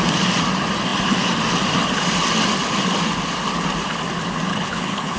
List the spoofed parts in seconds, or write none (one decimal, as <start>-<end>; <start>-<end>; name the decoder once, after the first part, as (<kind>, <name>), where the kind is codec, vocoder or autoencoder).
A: 4.5-5.2 (codec, HILCodec)